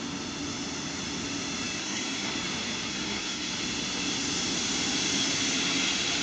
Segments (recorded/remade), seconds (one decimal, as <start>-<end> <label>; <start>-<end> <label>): 0.0-1.8 recorded; 1.8-2.3 remade; 2.3-2.9 recorded; 2.9-3.5 remade; 3.5-6.2 recorded